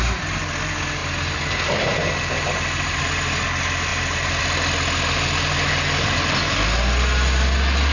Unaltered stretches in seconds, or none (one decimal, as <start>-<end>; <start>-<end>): 0.0-1.0; 3.0-3.9; 4.4-7.9